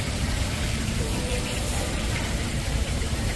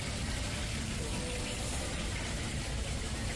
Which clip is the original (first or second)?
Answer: second